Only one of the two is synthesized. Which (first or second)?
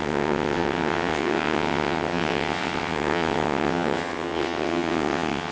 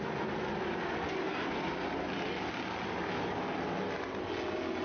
first